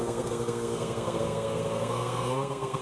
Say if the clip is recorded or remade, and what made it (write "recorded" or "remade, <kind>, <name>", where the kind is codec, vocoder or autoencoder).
remade, codec, SNAC